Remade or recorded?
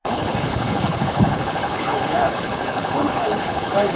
remade